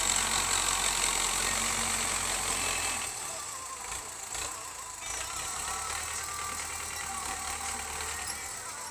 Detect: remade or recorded recorded